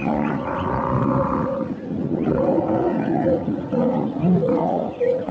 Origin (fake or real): fake